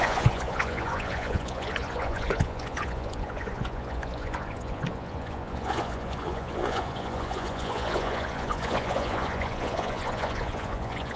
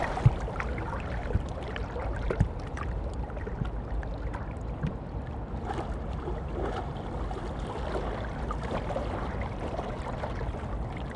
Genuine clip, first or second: second